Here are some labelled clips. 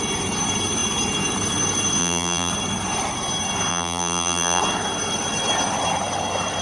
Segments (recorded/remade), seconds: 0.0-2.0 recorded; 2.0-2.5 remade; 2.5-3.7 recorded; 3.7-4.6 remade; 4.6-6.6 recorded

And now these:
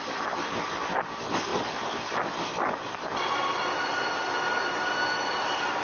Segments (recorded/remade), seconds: 0.0-5.8 remade

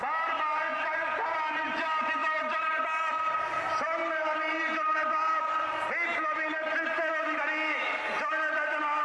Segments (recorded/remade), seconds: 0.0-2.2 recorded; 2.2-2.8 remade; 2.8-4.0 recorded; 4.0-4.7 remade; 4.7-9.0 recorded

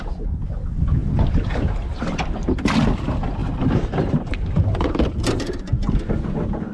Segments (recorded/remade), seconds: 0.0-1.0 recorded; 1.0-2.4 remade; 2.4-3.4 recorded; 3.4-6.1 remade; 6.1-6.7 recorded

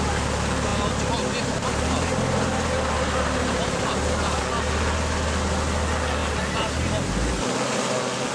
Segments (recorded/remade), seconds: 0.0-3.4 recorded; 3.4-4.4 remade; 4.4-8.3 recorded